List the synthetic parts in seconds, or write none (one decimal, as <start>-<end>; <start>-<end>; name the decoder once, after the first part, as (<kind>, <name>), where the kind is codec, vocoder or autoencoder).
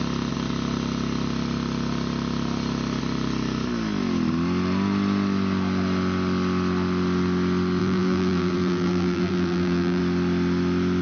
7.8-10.0 (vocoder, BigVGAN v2)